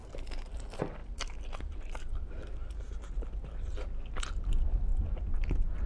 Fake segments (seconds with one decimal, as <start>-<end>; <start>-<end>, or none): none